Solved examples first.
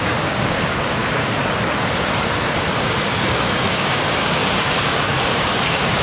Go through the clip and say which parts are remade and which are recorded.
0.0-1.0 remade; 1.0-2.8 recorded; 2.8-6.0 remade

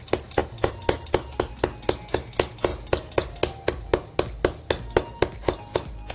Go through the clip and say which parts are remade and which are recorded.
0.0-6.1 recorded

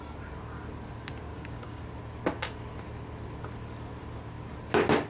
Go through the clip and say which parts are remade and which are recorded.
0.0-1.3 recorded; 1.3-1.8 remade; 1.8-5.1 recorded

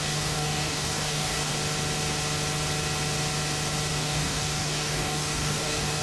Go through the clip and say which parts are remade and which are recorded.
0.0-1.5 remade; 1.5-3.9 recorded; 3.9-6.0 remade

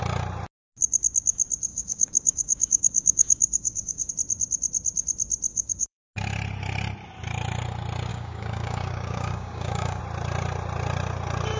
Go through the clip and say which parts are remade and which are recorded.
0.0-1.7 recorded; 1.7-4.1 remade; 4.1-5.5 recorded; 5.5-6.1 remade; 6.1-8.1 recorded; 8.1-10.0 remade; 10.0-11.6 recorded